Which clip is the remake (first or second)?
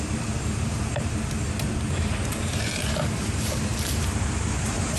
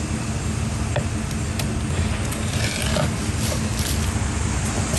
first